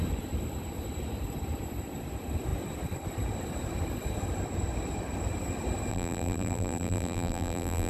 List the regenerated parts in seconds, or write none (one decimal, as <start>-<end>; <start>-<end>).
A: 5.9-7.9